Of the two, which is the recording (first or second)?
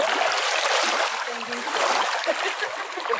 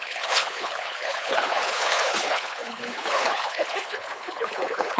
first